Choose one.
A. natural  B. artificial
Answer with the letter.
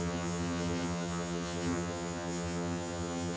B